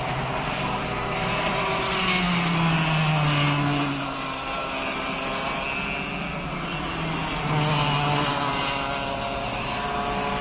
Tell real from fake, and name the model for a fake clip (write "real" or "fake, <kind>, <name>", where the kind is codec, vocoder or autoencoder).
real